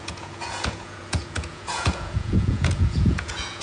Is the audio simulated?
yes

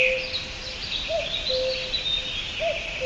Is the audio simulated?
no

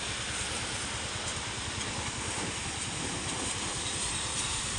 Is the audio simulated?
no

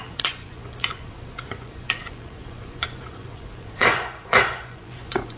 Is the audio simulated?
yes